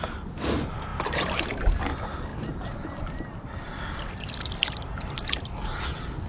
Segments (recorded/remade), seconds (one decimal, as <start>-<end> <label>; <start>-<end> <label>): 0.0-0.9 recorded; 0.9-1.8 remade; 1.8-6.3 recorded